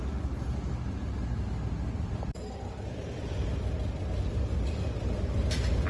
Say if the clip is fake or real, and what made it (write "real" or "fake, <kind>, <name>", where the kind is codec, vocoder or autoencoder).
real